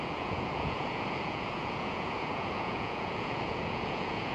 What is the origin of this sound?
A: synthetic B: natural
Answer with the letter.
A